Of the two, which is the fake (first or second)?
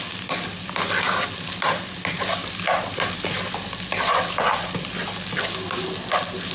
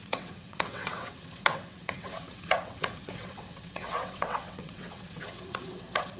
second